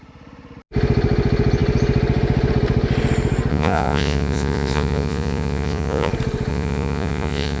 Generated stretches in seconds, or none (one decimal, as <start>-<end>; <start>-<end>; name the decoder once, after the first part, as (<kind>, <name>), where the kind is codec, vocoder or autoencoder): 3.5-6.1 (vocoder, Vocos); 6.5-7.6